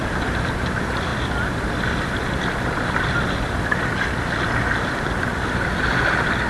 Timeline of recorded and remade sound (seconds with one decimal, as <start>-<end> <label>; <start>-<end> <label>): 0.0-1.1 recorded; 1.1-5.0 remade; 5.0-6.5 recorded